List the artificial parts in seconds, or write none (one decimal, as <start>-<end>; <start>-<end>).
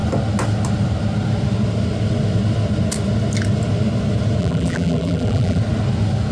4.4-5.6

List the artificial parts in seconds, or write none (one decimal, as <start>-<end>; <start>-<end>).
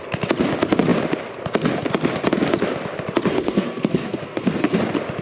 3.3-4.8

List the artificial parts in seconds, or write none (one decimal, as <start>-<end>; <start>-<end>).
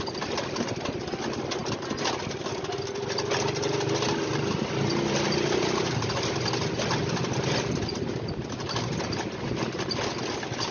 none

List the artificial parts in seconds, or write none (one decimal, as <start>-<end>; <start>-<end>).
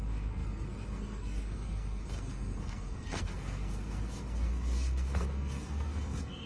0.0-6.5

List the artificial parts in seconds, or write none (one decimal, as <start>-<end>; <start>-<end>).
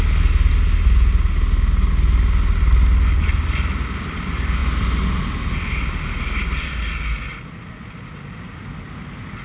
none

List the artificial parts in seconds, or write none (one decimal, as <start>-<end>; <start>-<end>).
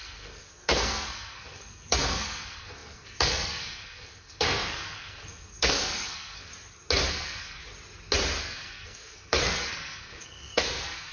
0.0-6.5; 7.1-7.6; 8.4-11.1